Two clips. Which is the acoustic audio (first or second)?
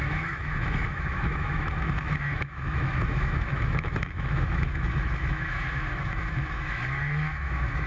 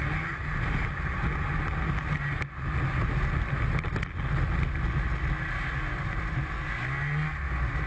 second